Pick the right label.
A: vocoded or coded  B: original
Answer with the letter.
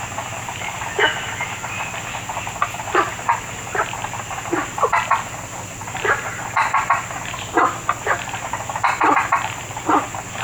B